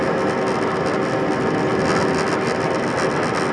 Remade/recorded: recorded